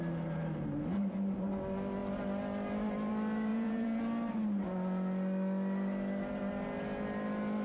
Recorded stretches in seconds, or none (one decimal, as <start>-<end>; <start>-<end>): 0.0-3.5; 4.0-7.6